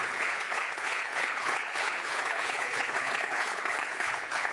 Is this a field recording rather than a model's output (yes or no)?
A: no